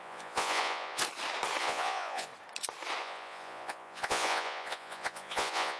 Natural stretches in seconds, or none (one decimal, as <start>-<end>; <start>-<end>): 1.0-1.6; 2.3-3.0